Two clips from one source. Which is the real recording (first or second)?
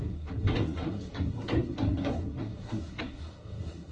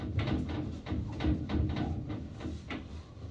second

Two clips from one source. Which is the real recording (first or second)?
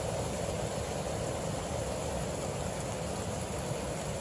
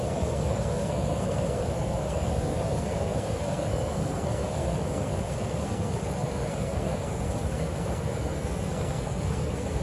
first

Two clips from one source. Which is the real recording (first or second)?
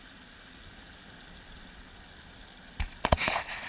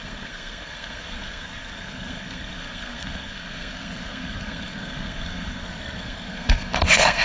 first